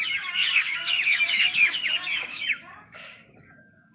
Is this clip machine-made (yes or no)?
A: yes